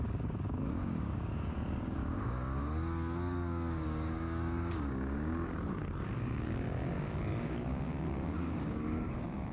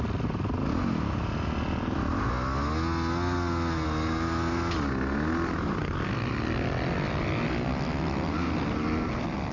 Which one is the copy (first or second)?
first